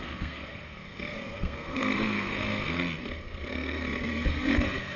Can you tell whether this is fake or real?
fake